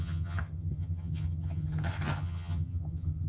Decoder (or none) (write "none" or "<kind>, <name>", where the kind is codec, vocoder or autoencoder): vocoder, HiFi-GAN